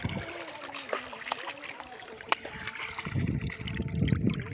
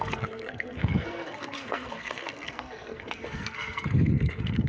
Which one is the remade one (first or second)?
second